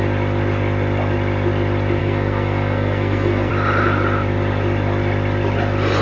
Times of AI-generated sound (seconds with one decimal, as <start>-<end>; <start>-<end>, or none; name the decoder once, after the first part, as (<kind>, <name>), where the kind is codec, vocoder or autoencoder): 2.0-3.5 (codec, SNAC)